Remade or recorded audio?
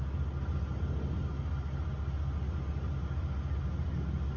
recorded